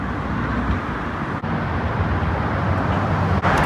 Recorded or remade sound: recorded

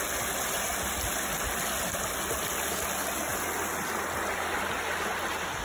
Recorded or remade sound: recorded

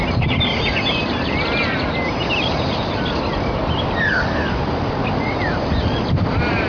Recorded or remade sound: recorded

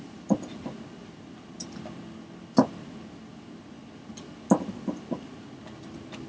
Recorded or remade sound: recorded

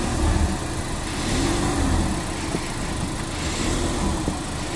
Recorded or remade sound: recorded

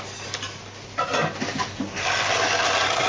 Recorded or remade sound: recorded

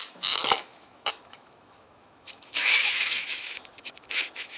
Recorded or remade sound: remade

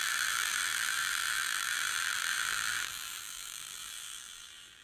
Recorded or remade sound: remade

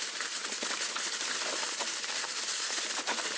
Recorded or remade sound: recorded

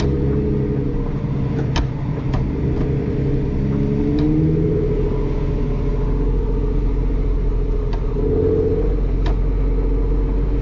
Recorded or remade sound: recorded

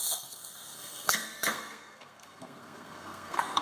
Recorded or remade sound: remade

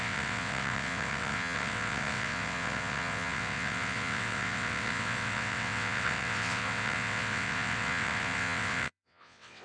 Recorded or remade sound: remade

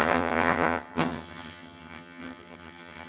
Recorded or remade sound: remade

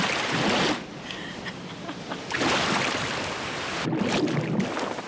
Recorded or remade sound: recorded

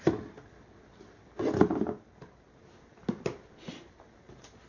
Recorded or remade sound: recorded